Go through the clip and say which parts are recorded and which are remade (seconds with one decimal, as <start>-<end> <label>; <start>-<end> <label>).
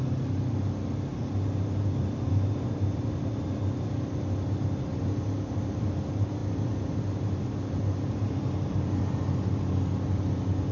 0.0-10.7 recorded